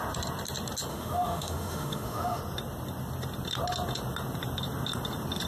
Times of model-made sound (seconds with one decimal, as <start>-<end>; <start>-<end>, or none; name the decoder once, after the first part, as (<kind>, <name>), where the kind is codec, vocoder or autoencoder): 0.9-2.4 (autoencoder, DAC-VAE)